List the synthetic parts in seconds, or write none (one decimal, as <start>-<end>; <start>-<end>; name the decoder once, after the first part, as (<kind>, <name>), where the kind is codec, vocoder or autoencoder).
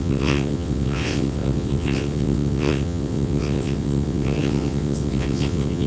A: 0.0-5.9 (vocoder, WaveNeXt)